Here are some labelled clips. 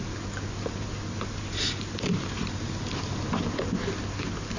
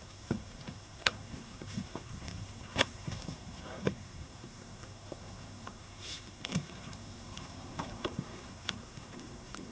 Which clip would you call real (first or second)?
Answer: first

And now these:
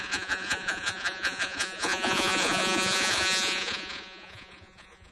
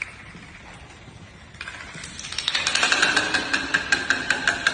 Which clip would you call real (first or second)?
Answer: second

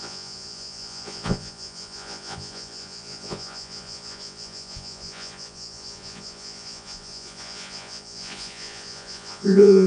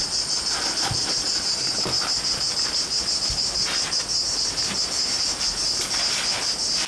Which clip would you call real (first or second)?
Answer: second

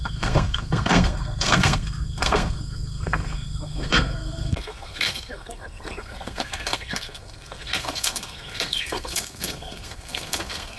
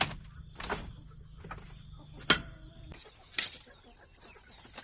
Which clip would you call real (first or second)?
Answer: second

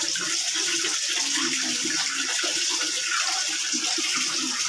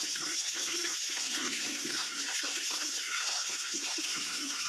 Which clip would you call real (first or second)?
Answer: first